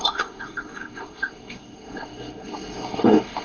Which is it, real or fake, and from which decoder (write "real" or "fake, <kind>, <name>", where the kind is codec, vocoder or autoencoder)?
fake, codec, SNAC